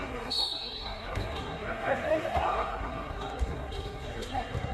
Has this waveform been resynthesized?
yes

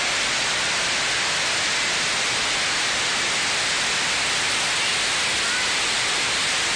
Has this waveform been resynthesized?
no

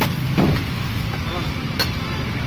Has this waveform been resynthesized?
no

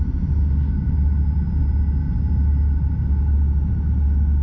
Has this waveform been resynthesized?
no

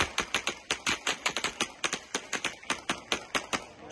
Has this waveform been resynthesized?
no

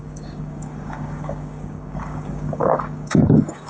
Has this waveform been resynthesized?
yes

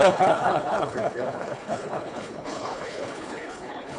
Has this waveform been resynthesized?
yes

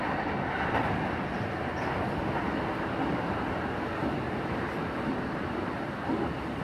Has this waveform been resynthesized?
no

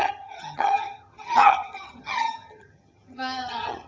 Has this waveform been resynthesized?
yes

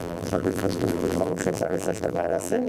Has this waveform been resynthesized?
yes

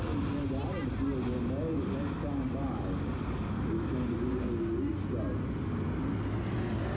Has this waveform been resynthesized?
no